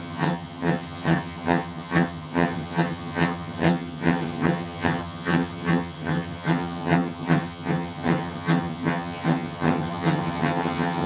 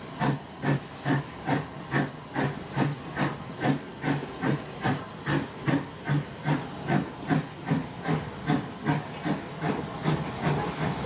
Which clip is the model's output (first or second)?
first